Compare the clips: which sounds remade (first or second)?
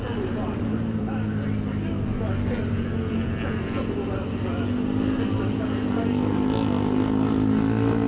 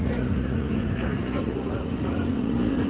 second